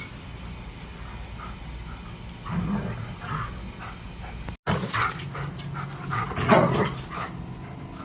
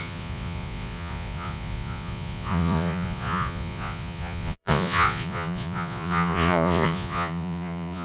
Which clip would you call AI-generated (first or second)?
second